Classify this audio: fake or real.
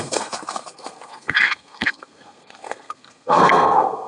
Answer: fake